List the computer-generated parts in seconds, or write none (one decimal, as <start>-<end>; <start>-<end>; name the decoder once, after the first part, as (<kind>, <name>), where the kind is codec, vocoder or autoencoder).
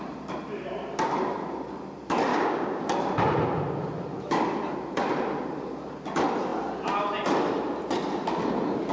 2.3-2.8 (codec, DAC)